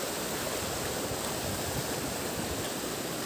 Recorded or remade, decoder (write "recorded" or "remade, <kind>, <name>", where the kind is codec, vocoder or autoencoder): recorded